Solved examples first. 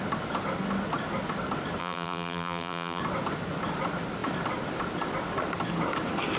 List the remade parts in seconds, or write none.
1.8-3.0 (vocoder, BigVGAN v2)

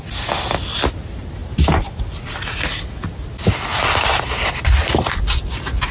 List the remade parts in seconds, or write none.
1.4-2.0 (vocoder, BigVGAN v2); 3.7-5.1

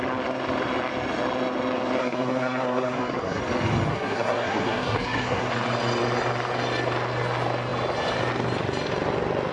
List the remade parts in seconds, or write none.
2.0-3.4 (codec, SNAC); 3.9-5.5

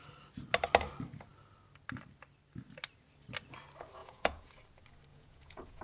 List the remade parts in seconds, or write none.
4.0-4.5 (vocoder, Vocos); 5.1-5.8

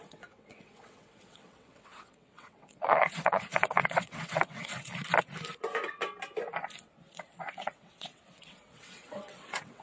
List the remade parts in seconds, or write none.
0.0-4.9 (vocoder, WaveNeXt); 7.1-9.8

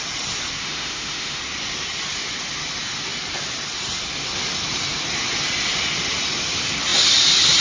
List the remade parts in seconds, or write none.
0.6-1.4 (autoencoder, DAC-VAE)

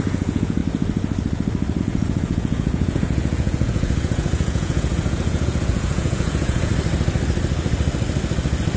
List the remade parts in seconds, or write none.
0.0-0.6 (vocoder, Vocos); 1.8-6.7